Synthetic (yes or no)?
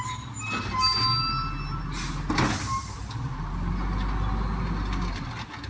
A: no